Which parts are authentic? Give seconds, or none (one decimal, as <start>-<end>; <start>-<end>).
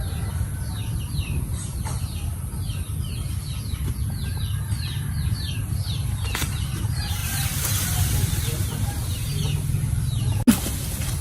0.0-7.2; 9.1-11.2